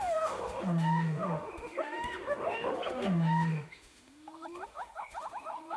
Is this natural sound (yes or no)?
no